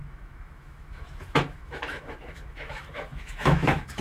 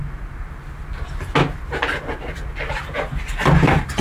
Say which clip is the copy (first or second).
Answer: first